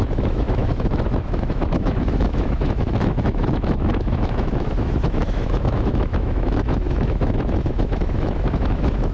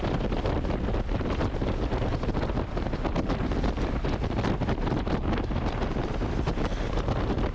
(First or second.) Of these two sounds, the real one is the second